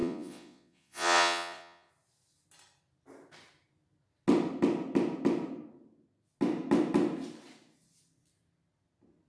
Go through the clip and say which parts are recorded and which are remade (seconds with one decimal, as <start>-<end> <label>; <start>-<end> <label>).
0.0-1.9 remade; 1.9-9.3 recorded